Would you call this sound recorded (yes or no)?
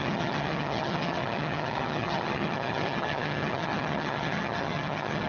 no